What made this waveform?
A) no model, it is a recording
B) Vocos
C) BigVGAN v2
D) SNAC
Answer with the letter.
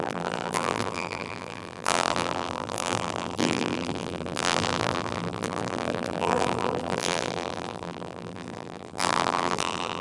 C